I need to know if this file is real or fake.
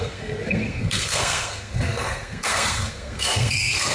fake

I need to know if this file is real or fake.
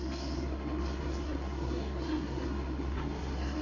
fake